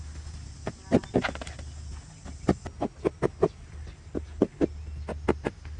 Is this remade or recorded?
recorded